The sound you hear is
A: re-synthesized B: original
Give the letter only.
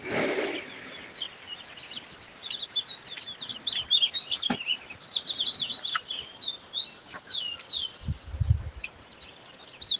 B